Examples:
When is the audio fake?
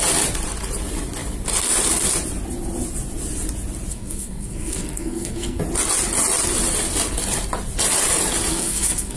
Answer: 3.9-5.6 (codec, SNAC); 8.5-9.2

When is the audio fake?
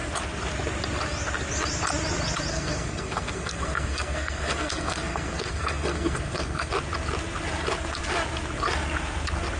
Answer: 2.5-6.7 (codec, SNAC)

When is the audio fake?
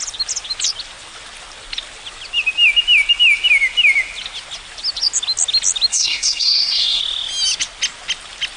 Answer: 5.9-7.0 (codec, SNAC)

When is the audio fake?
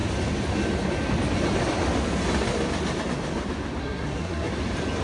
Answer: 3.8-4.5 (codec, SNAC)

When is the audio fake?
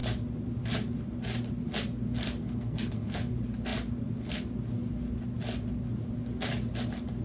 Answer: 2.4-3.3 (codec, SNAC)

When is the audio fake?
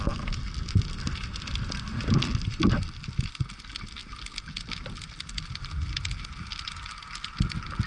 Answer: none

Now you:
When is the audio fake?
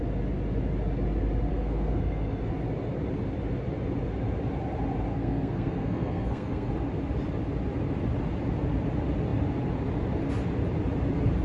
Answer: 1.5-2.5 (codec, SNAC); 5.1-6.7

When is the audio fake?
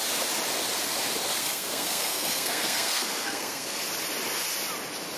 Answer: 1.4-3.8 (codec, SNAC)